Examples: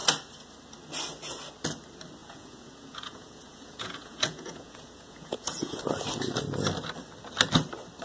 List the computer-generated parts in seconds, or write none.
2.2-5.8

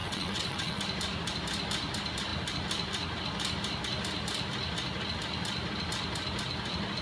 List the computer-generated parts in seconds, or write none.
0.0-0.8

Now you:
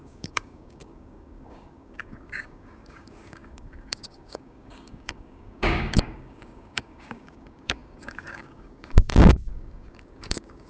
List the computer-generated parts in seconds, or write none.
0.0-10.7